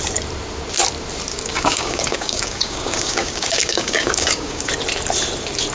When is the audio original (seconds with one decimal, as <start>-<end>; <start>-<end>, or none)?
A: 0.0-1.3; 4.7-5.7